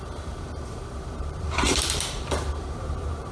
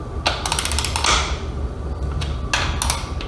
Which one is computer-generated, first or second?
first